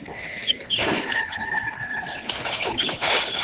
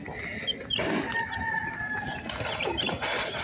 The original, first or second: second